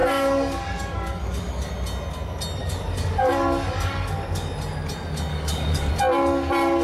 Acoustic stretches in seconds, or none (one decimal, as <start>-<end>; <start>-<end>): 1.7-2.6; 4.5-5.3; 5.9-6.8